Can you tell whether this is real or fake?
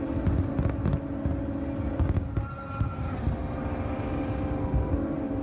real